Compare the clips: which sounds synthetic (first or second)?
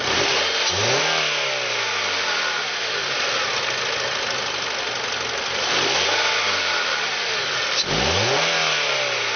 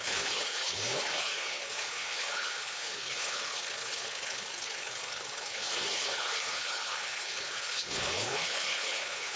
second